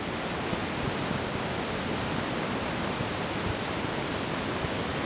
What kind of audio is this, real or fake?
real